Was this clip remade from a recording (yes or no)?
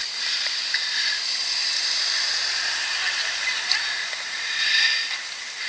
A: yes